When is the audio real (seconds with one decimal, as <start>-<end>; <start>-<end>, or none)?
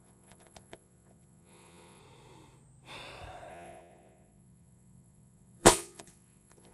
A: 2.0-3.5